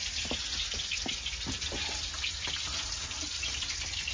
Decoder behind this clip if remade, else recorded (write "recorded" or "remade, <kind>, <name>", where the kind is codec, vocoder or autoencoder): recorded